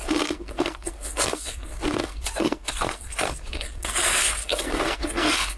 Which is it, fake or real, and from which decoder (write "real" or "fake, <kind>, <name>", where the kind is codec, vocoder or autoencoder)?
fake, codec, SNAC